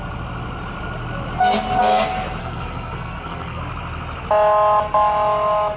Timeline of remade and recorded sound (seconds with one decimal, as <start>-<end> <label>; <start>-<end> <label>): 0.0-2.4 recorded; 2.4-3.6 remade; 3.6-5.8 recorded